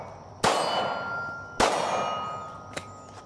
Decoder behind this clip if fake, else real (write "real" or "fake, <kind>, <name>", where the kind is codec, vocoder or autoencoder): real